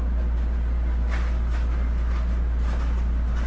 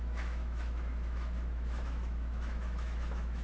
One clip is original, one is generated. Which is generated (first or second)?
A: second